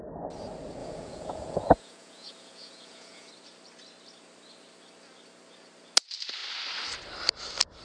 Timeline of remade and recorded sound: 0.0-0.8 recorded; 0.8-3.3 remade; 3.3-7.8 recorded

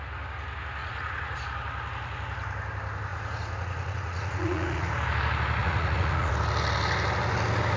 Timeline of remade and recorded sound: 0.0-0.8 recorded; 0.8-1.4 remade; 1.4-3.1 recorded; 3.1-4.9 remade; 4.9-5.6 recorded; 5.6-6.3 remade; 6.3-7.8 recorded

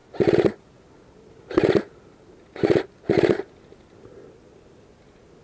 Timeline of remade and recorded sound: 0.0-5.4 recorded

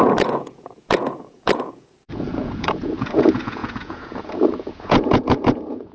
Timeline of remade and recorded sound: 0.0-5.9 remade

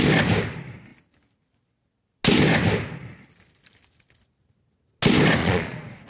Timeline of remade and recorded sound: 0.0-5.4 recorded; 5.4-6.1 remade

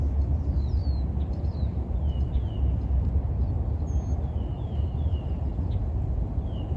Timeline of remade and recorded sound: 0.0-5.5 recorded; 5.5-6.3 remade; 6.3-6.8 recorded